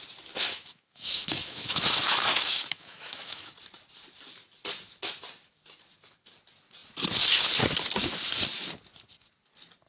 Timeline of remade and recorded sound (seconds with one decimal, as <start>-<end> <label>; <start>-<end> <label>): 0.0-0.4 recorded; 0.4-3.5 remade; 3.5-9.9 recorded